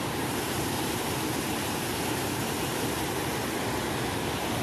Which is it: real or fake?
fake